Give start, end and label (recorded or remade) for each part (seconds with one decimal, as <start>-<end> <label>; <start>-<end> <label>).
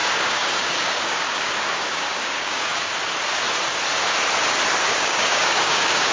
0.0-2.9 remade; 2.9-4.9 recorded; 4.9-6.1 remade